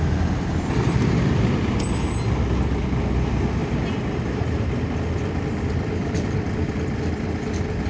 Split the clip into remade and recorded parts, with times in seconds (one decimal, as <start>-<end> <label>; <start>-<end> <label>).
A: 0.0-3.6 recorded; 3.6-4.7 remade; 4.7-7.9 recorded